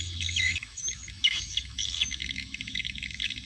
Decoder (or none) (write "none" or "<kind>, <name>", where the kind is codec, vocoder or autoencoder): autoencoder, DAC-VAE